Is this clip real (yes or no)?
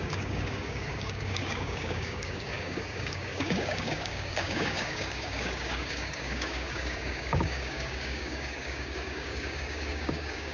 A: no